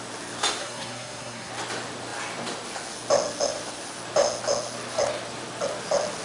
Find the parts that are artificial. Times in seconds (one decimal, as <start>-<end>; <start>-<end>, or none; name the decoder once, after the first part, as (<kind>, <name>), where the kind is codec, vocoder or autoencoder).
0.6-1.5 (codec, SNAC)